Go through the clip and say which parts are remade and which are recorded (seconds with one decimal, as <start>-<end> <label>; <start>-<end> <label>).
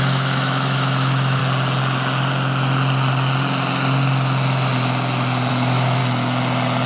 0.0-1.4 remade; 1.4-5.5 recorded; 5.5-6.0 remade; 6.0-6.9 recorded